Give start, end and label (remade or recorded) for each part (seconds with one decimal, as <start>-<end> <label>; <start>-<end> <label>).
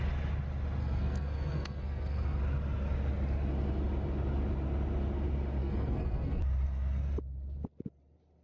0.0-0.8 recorded; 0.8-2.4 remade; 2.4-5.6 recorded; 5.6-6.4 remade; 6.4-8.4 recorded